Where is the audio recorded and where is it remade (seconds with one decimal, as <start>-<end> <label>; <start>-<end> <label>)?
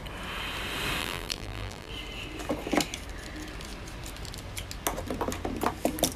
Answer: 0.0-1.0 recorded; 1.0-1.9 remade; 1.9-6.2 recorded